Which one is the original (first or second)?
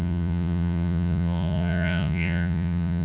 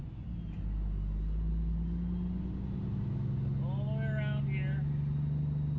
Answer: second